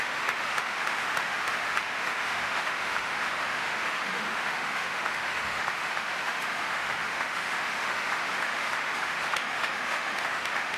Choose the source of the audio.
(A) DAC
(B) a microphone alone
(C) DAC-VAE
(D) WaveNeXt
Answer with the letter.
C